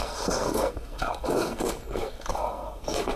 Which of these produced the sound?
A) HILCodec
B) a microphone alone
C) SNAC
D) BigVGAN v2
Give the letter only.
C